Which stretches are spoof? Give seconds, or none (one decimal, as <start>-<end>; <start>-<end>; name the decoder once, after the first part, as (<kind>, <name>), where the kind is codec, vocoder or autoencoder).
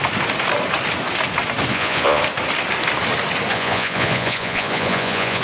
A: 1.7-2.2 (vocoder, Vocos); 3.5-5.4